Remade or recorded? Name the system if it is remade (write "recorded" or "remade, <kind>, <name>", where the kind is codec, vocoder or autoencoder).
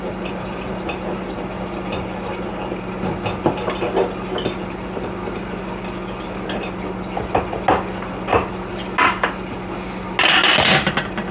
recorded